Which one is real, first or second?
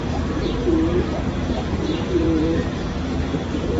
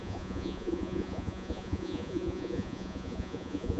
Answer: first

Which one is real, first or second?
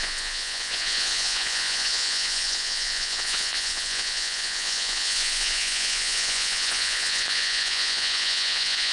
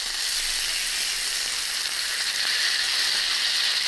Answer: second